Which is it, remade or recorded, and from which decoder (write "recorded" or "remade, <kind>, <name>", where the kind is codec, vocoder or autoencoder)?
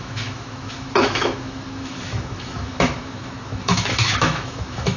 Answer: remade, autoencoder, DAC-VAE